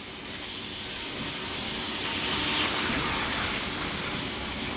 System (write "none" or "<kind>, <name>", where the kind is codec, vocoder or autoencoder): none